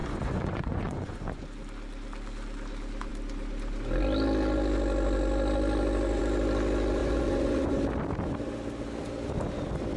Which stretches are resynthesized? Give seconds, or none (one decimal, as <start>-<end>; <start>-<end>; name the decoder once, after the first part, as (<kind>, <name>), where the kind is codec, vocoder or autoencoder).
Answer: 0.0-1.4 (vocoder, Vocos); 7.0-7.8